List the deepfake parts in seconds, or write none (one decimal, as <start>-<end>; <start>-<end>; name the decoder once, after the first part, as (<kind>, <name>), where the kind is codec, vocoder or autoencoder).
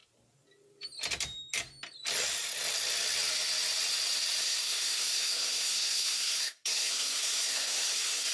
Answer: 4.4-8.3 (codec, SNAC)